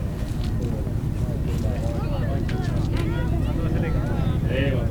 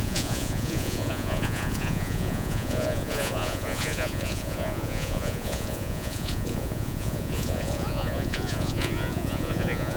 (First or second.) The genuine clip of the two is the first